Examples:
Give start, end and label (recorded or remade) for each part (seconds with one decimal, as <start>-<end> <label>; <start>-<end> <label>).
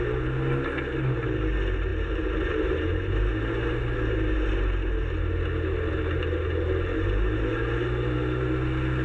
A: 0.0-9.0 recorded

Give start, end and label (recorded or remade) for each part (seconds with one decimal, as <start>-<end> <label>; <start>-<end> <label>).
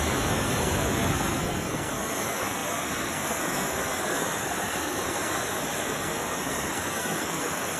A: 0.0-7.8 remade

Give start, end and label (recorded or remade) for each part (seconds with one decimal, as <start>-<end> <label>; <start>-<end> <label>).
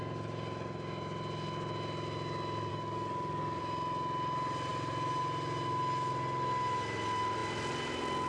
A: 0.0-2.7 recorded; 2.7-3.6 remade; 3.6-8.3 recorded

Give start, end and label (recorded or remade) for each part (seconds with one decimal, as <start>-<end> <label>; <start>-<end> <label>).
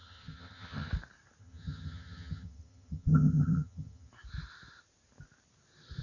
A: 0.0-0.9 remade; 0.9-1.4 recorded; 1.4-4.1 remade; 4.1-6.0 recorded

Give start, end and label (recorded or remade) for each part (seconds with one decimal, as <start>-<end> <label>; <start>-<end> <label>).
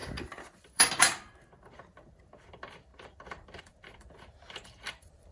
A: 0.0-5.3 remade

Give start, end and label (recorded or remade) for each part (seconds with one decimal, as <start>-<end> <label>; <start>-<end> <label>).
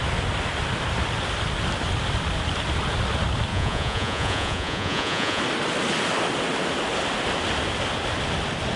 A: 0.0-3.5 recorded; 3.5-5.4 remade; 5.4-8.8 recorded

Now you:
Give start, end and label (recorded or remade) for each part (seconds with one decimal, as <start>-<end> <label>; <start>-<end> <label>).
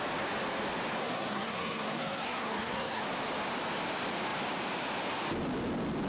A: 0.0-1.0 recorded; 1.0-3.0 remade; 3.0-6.1 recorded